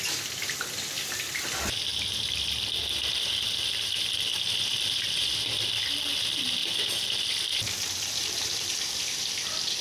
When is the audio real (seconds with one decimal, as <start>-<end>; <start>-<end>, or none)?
0.0-1.9; 5.5-6.6; 9.2-9.8